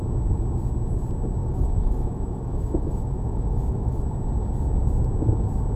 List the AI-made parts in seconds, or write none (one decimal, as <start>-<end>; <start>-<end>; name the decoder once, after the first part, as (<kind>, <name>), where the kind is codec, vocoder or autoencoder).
1.4-4.0 (autoencoder, DAC-VAE)